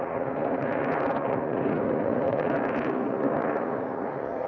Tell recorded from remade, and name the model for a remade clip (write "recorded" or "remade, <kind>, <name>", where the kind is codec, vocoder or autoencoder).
remade, vocoder, Vocos